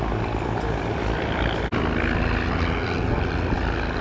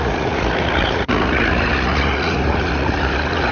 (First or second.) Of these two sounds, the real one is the first